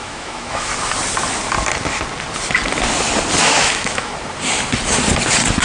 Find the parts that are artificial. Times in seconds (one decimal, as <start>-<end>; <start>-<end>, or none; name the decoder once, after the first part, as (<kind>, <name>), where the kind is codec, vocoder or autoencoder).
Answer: 0.0-0.7 (autoencoder, DAC-VAE); 3.4-4.1